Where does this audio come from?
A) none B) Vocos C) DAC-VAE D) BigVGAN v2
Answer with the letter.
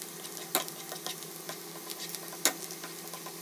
A